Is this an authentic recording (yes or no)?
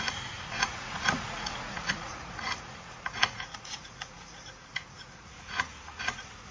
no